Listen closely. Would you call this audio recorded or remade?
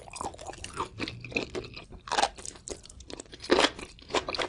recorded